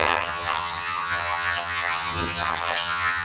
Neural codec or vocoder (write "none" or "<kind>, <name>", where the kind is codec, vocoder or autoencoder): vocoder, HiFi-GAN